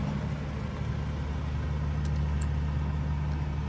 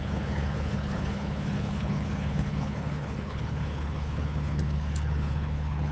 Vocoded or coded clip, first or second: second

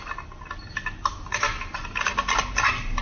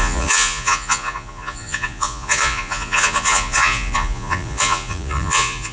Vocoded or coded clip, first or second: second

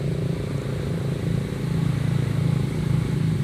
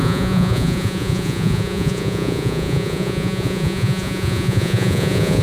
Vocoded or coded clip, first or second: second